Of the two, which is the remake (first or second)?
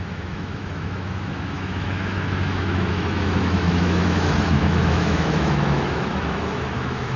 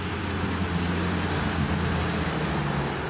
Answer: first